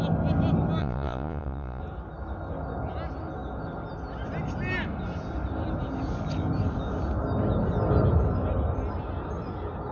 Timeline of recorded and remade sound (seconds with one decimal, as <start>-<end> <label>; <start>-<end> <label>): 0.0-0.8 recorded; 0.8-1.8 remade; 1.8-9.9 recorded